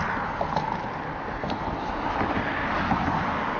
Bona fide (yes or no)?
yes